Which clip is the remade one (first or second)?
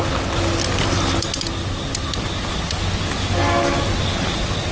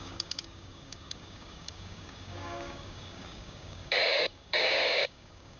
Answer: second